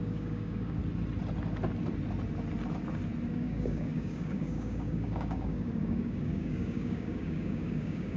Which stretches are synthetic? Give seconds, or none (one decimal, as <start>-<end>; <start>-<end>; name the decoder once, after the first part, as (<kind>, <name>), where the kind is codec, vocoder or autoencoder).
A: 0.0-0.8 (codec, DAC); 3.3-8.2